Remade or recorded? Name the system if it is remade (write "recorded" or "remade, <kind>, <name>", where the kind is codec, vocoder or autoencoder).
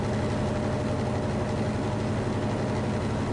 recorded